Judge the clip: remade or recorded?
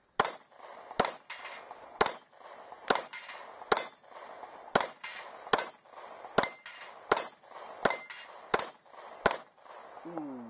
recorded